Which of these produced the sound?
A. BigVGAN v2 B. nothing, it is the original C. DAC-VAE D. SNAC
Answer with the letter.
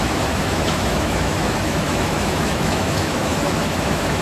C